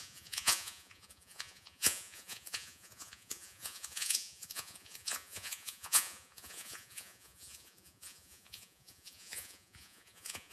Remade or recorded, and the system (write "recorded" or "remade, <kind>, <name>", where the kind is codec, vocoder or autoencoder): remade, vocoder, Vocos